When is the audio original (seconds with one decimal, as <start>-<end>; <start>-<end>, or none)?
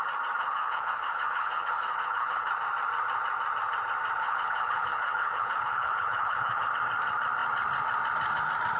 0.0-0.4; 2.5-4.2; 6.7-8.8